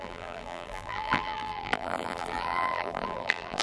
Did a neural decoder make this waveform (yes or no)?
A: yes